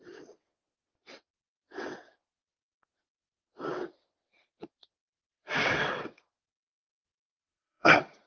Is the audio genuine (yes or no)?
no